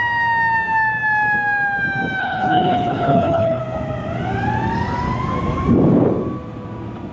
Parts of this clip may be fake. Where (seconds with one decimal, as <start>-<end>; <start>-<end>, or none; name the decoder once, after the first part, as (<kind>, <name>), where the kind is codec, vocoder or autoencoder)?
2.2-3.6 (codec, HILCodec)